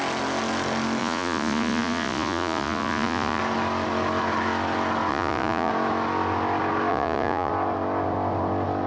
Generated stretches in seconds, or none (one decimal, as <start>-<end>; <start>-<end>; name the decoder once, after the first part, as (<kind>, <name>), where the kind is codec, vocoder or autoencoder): 1.0-3.4 (vocoder, Vocos); 5.1-5.7; 6.9-7.5